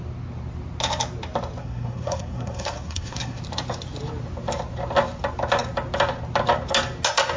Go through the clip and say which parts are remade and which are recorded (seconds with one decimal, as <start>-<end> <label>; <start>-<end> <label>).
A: 0.0-1.6 recorded; 1.6-3.4 remade; 3.4-7.4 recorded

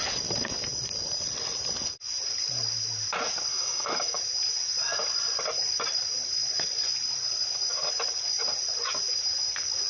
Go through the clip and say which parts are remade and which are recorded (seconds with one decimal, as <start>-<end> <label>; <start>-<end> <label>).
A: 0.0-3.5 recorded; 3.5-4.2 remade; 4.2-9.9 recorded

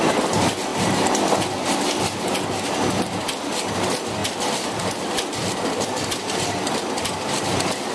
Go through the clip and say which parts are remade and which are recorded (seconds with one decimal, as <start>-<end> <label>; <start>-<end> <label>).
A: 0.0-0.7 recorded; 0.7-1.2 remade; 1.2-4.2 recorded; 4.2-7.9 remade

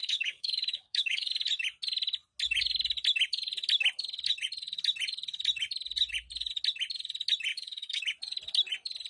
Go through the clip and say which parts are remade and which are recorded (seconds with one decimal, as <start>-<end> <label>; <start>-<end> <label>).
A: 0.0-1.3 remade; 1.3-7.5 recorded; 7.5-8.0 remade; 8.0-9.1 recorded

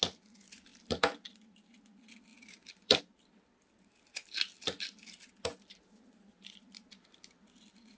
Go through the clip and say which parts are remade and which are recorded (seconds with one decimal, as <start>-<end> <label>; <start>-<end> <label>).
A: 0.0-0.7 recorded; 0.7-1.8 remade; 1.8-2.3 recorded; 2.3-3.0 remade; 3.0-8.0 recorded

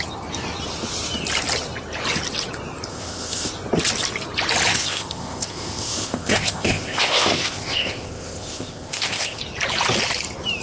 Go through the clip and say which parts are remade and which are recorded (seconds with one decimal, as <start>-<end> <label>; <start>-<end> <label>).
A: 0.0-2.9 recorded; 2.9-3.5 remade; 3.5-4.7 recorded; 4.7-9.4 remade; 9.4-10.6 recorded

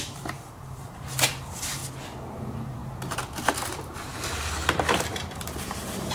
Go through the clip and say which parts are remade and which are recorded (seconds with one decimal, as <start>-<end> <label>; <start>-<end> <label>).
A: 0.0-1.8 remade; 1.8-2.4 recorded; 2.4-6.1 remade